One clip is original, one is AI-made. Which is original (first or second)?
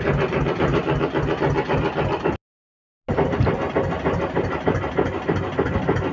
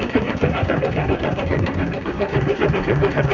first